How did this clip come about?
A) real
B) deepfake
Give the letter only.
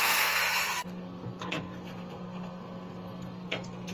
B